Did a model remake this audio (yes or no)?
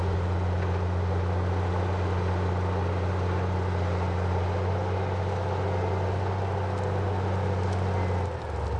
no